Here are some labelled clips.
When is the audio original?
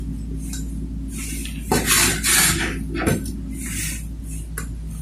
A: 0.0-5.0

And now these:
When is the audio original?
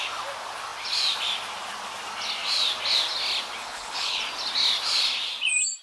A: 0.0-3.6; 4.2-5.8